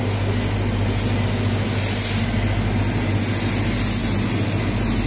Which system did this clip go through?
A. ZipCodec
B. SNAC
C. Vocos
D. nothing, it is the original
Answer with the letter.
D